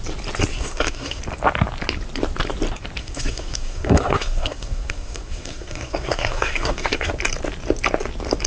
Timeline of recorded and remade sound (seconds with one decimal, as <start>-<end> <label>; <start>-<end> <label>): 0.0-0.5 recorded; 0.5-1.2 remade; 1.2-3.0 recorded; 3.0-7.1 remade; 7.1-8.5 recorded